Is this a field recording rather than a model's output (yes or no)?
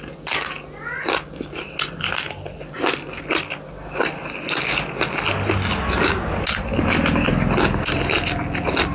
yes